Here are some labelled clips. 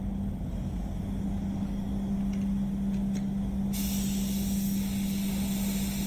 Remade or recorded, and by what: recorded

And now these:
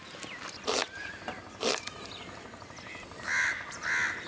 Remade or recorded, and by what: remade, vocoder, BigVGAN v2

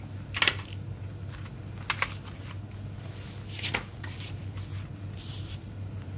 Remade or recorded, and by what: recorded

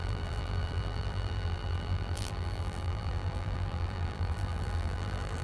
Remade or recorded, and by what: remade, vocoder, BigVGAN v2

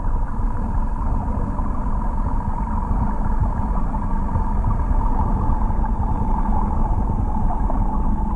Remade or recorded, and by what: remade, vocoder, BigVGAN v2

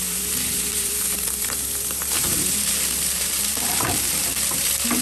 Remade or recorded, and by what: remade, vocoder, BigVGAN v2